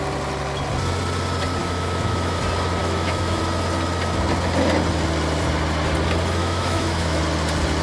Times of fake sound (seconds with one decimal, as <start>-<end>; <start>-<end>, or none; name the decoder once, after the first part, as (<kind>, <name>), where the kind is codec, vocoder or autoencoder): 1.6-2.4 (autoencoder, DAC-VAE); 2.8-3.4; 6.4-7.2